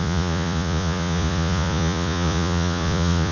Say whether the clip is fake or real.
fake